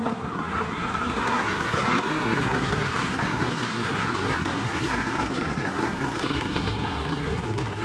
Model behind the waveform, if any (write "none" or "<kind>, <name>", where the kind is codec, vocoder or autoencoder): codec, SNAC